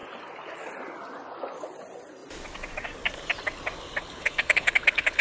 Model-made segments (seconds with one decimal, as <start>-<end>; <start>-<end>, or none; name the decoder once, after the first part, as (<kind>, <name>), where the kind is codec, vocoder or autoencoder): 4.0-5.2 (codec, HILCodec)